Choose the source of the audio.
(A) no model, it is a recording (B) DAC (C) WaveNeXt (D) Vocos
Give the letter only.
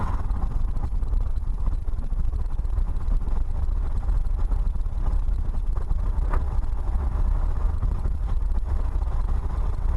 C